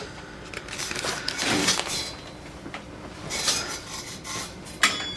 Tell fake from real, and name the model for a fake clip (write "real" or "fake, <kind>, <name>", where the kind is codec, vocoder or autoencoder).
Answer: fake, vocoder, BigVGAN v2